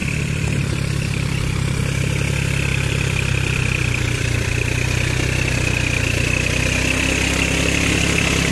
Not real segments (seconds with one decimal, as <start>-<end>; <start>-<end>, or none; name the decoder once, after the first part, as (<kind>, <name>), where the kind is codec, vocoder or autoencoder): 0.0-2.0 (vocoder, BigVGAN v2); 2.7-4.5